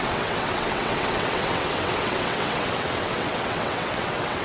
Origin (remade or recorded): remade